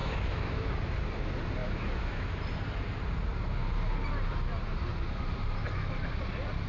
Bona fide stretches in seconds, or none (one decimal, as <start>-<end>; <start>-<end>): 0.7-1.6; 2.4-6.7